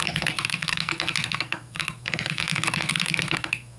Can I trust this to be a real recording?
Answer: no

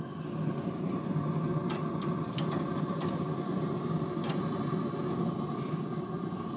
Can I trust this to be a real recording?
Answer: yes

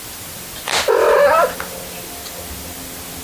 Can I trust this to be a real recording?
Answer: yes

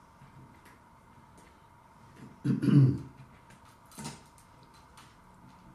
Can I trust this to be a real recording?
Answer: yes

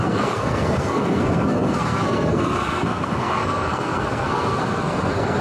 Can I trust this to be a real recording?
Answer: no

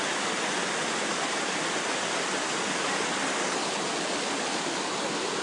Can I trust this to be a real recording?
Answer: yes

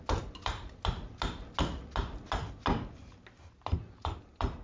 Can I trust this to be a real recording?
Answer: yes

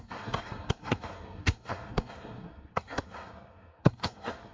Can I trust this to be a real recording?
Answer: no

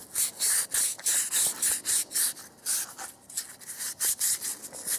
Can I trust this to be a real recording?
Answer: yes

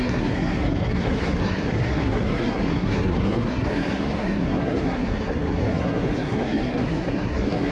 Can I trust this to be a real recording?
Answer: no